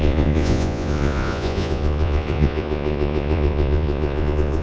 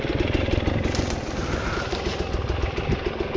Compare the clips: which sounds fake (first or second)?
first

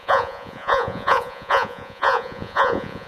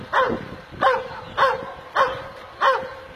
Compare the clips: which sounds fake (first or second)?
first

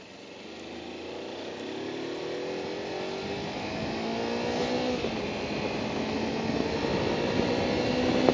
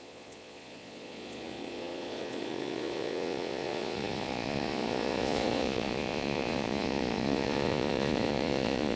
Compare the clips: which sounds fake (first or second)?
second